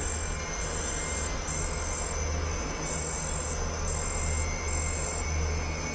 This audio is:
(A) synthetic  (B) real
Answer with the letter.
B